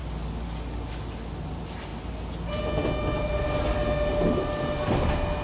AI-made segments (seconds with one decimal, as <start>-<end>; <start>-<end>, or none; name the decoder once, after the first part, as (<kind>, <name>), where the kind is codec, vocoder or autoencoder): none